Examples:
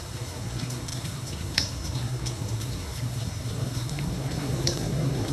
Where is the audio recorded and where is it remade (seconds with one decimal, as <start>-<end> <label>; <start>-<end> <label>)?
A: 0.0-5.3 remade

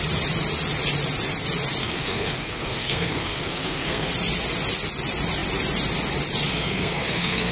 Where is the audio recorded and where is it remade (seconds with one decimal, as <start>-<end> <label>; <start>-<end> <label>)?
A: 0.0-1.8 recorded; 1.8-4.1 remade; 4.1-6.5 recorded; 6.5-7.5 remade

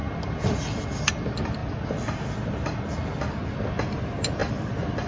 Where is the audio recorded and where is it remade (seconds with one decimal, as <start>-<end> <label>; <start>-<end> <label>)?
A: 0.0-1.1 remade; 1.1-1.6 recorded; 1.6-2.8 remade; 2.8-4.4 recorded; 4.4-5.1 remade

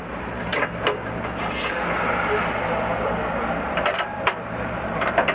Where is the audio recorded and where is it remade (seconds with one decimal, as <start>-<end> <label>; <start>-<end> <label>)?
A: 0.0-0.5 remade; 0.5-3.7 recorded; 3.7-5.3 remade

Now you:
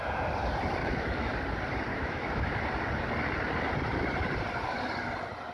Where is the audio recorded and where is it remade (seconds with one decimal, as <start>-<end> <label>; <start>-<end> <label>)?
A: 0.0-0.8 recorded; 0.8-1.3 remade; 1.3-1.9 recorded; 1.9-2.6 remade; 2.6-5.5 recorded

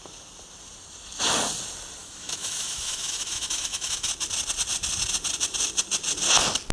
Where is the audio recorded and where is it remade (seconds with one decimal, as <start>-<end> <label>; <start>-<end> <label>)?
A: 0.0-2.0 recorded; 2.0-4.1 remade; 4.1-6.7 recorded

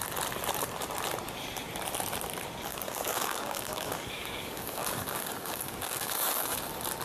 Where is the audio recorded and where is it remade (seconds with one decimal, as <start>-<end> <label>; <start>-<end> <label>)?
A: 0.0-2.7 recorded; 2.7-6.6 remade; 6.6-7.0 recorded

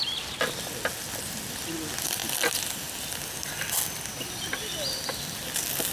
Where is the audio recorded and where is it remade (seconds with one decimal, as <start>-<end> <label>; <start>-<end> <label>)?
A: 0.0-5.9 recorded